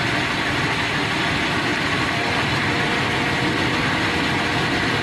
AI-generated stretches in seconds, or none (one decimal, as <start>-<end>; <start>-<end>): none